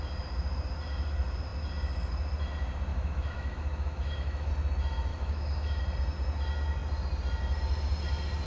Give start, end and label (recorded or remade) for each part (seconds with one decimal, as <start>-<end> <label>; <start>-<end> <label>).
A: 0.0-2.9 recorded; 2.9-4.5 remade; 4.5-5.1 recorded; 5.1-5.8 remade; 5.8-8.5 recorded